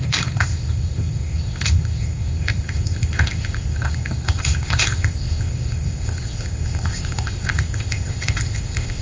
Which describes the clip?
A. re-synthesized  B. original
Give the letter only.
A